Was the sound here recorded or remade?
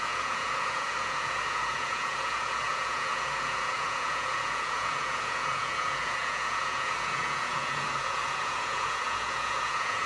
remade